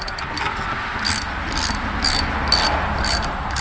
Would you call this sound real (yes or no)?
yes